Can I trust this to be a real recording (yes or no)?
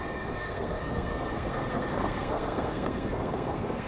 no